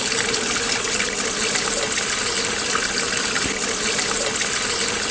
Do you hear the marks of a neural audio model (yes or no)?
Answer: no